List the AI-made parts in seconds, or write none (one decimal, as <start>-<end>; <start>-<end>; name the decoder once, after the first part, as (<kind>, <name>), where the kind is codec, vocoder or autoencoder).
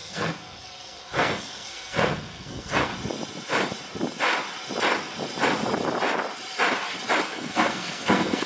0.0-2.9 (codec, SNAC); 7.2-8.5